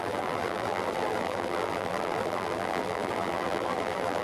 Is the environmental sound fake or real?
fake